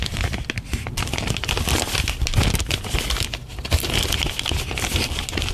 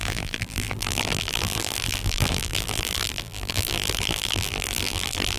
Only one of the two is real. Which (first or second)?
first